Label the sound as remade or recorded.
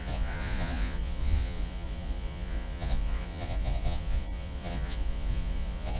remade